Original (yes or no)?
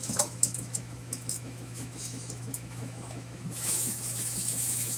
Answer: no